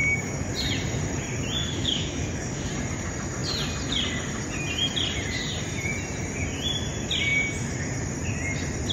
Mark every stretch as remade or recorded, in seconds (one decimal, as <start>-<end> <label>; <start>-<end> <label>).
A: 0.0-0.5 remade; 0.5-1.6 recorded; 1.6-2.7 remade; 2.7-8.9 recorded